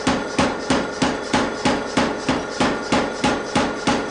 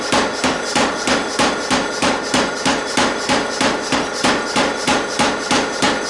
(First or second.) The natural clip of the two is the first